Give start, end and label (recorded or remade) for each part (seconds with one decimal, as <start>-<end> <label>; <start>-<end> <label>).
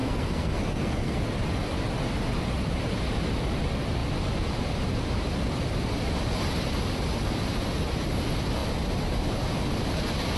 0.0-1.2 remade; 1.2-10.4 recorded